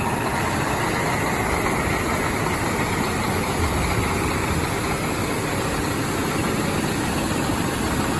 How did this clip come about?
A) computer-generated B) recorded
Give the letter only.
B